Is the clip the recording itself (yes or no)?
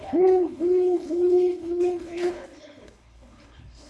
no